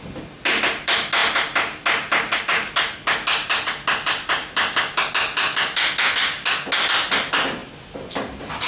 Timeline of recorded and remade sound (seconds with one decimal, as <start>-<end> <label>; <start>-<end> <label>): 0.0-8.7 recorded